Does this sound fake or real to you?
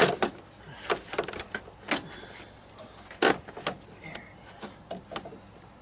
real